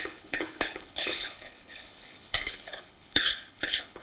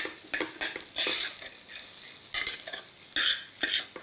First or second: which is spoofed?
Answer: first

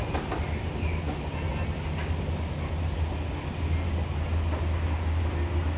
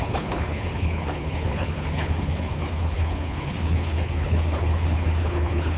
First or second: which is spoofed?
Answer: second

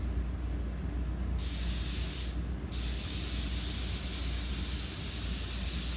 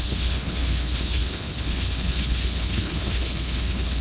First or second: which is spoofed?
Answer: second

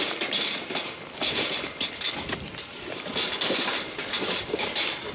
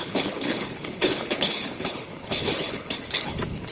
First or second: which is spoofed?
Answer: second